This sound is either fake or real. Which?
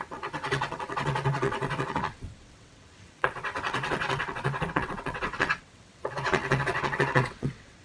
fake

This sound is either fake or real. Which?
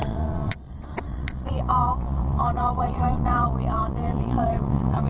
fake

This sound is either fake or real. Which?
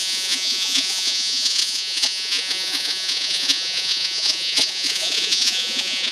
fake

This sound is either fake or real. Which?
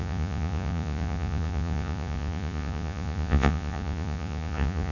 fake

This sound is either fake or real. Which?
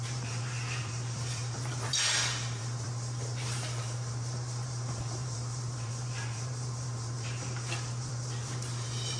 fake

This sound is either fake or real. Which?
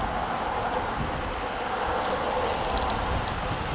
real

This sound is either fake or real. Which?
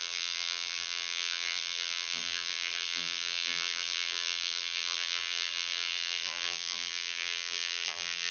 fake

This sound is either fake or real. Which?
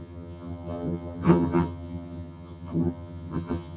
fake